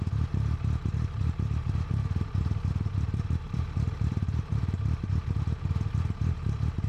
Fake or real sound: fake